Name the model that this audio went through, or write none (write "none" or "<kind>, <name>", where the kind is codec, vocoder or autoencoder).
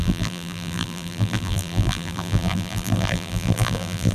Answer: vocoder, BigVGAN v2